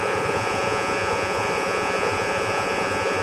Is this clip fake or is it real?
fake